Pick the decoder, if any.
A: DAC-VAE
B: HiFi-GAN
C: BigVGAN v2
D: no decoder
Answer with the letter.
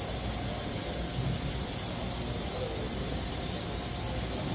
D